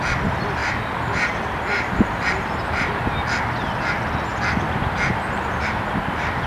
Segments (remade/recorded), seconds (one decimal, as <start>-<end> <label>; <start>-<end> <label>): 0.0-0.6 recorded; 0.6-2.9 remade; 2.9-6.5 recorded